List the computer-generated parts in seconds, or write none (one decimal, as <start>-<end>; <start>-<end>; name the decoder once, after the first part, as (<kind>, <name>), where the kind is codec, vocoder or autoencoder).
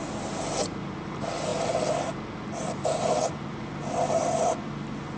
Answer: none